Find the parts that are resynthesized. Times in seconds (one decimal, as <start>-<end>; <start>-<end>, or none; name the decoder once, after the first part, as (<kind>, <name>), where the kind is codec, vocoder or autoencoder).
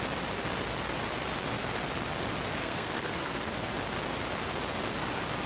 2.6-3.7 (codec, SNAC)